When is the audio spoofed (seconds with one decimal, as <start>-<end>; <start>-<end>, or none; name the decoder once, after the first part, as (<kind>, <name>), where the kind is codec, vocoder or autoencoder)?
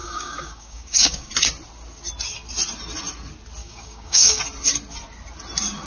0.0-1.3 (codec, DAC); 3.6-4.4